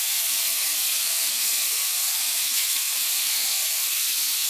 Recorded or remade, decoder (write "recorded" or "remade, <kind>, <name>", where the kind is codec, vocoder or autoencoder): remade, codec, SNAC